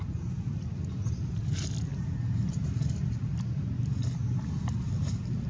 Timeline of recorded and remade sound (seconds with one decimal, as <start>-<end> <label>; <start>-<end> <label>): 0.0-5.5 recorded